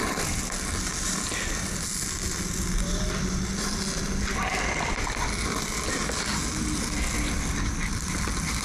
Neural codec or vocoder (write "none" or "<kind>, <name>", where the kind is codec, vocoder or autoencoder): none